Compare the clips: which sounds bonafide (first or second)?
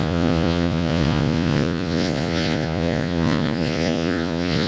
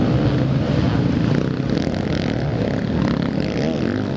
second